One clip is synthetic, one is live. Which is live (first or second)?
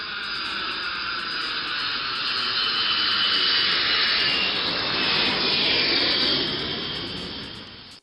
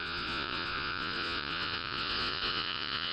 first